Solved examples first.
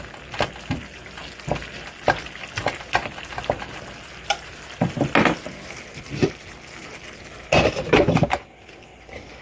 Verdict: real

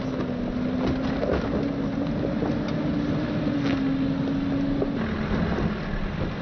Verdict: real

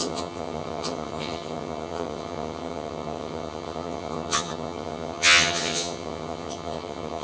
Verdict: fake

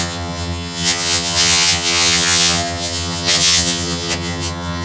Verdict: fake